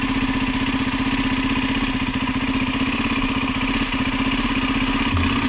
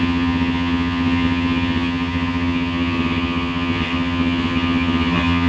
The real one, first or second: first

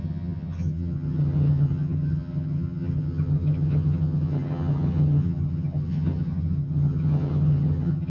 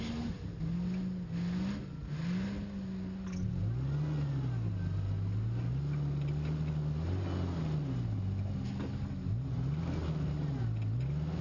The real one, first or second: second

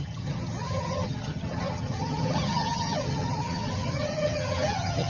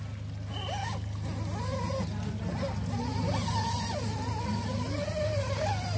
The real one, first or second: second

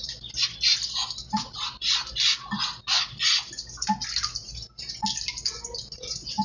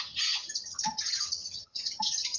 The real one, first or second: first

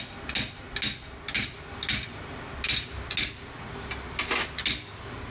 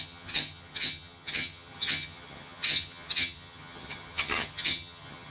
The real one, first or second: first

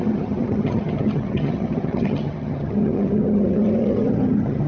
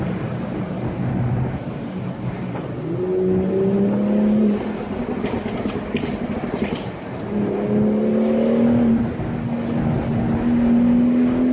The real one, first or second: second